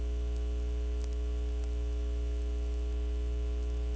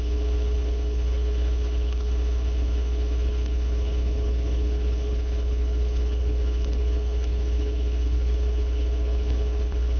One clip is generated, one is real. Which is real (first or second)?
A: first